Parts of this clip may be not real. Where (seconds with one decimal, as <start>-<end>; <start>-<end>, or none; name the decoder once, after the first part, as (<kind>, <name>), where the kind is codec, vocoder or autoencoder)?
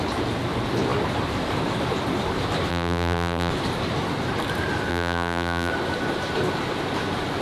2.7-3.5 (vocoder, BigVGAN v2); 4.9-5.7